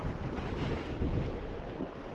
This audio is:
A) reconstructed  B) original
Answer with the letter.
B